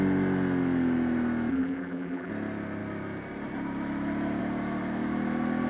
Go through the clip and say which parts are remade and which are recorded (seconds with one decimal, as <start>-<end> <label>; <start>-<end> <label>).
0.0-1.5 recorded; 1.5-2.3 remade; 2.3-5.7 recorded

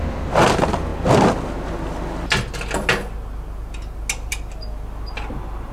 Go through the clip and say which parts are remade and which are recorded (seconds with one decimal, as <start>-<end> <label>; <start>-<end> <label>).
0.0-5.7 recorded

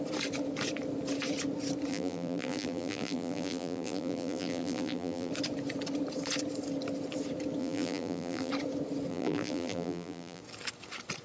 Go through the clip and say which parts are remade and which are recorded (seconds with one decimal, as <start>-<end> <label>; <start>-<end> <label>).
0.0-1.9 recorded; 1.9-5.3 remade; 5.3-7.6 recorded; 7.6-8.5 remade; 8.5-9.1 recorded; 9.1-10.4 remade; 10.4-11.2 recorded